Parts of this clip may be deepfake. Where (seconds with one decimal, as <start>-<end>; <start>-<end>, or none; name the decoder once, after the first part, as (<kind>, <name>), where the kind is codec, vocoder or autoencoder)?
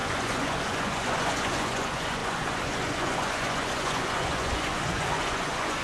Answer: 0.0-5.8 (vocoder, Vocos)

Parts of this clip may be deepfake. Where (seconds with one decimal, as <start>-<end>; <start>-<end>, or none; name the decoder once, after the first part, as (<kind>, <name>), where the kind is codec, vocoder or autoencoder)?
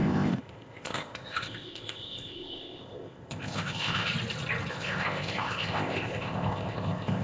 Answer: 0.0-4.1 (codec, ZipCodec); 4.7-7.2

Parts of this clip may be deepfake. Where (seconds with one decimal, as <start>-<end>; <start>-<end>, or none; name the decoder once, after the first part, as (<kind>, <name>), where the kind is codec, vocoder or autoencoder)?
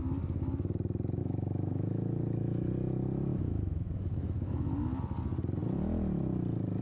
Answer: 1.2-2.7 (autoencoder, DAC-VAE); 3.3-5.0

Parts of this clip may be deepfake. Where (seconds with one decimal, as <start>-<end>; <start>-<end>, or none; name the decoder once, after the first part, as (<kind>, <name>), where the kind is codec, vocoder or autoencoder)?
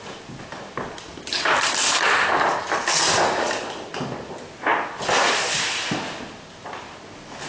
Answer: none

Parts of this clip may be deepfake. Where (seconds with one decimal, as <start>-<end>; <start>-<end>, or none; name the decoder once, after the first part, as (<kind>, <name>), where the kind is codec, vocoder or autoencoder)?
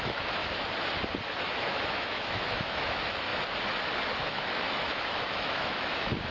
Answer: 0.0-0.4 (autoencoder, DAC-VAE); 1.4-3.3; 4.2-6.3